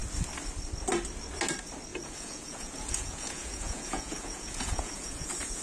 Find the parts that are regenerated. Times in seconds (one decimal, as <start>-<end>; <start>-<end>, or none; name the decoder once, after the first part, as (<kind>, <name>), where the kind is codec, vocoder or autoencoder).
1.9-5.6 (vocoder, Vocos)